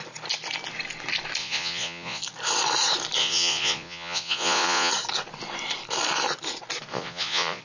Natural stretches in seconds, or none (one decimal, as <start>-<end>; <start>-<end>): 0.0-1.4; 2.2-3.2; 4.9-6.9